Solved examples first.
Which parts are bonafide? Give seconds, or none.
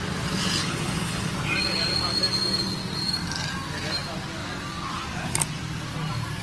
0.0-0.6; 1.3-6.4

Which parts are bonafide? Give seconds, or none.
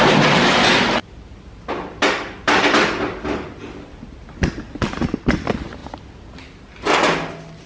5.8-7.7